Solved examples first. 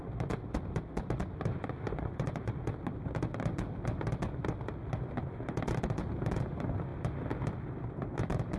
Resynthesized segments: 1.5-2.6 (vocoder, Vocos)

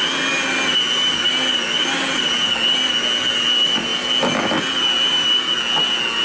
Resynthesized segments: none